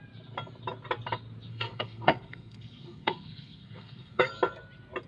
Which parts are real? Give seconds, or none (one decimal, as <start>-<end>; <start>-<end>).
0.0-1.5; 4.3-5.1